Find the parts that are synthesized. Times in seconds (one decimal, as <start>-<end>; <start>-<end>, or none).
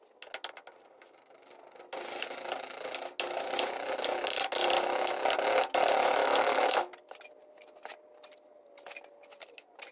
6.2-6.9